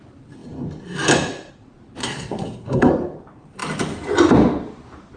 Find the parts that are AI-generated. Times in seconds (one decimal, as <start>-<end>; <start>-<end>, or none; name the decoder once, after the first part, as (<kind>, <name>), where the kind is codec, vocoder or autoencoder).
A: 2.0-2.9 (codec, SNAC)